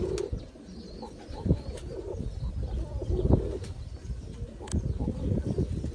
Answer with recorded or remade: recorded